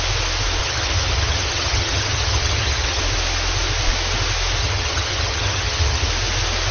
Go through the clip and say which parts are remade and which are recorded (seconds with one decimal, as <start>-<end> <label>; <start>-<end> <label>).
0.0-0.6 recorded; 0.6-3.0 remade; 3.0-4.6 recorded; 4.6-6.1 remade; 6.1-6.7 recorded